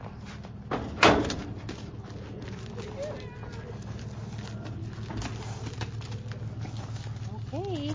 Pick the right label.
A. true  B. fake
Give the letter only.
A